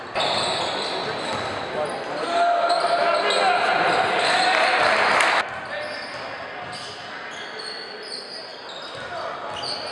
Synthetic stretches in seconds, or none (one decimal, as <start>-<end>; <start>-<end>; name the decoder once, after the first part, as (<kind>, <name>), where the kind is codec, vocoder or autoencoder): none